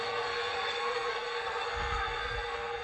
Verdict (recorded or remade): remade